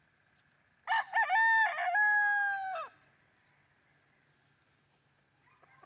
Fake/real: real